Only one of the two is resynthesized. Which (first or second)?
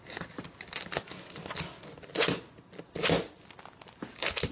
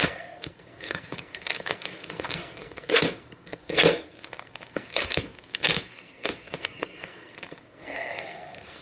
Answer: second